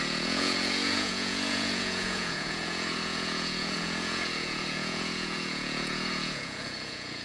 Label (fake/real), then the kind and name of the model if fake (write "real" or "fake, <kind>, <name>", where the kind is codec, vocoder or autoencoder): fake, vocoder, Vocos